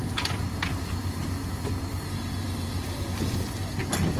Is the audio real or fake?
real